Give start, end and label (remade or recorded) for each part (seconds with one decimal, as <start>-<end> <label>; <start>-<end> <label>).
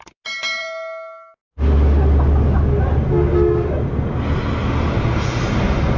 0.0-6.0 recorded